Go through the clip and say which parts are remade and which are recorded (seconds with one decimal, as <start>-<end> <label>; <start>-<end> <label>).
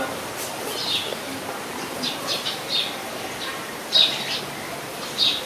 0.0-5.5 recorded